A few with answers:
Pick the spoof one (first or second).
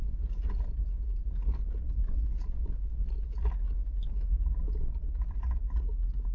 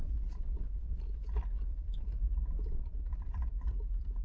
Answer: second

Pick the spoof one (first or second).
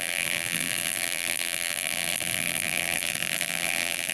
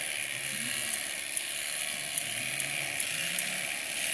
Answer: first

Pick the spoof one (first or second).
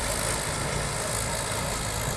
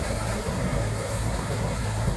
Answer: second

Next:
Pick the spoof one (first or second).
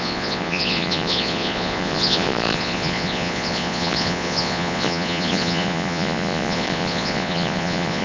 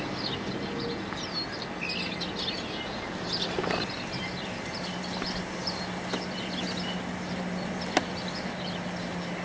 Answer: first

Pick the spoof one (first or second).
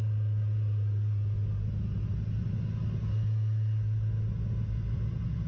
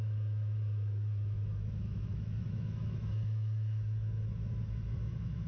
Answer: second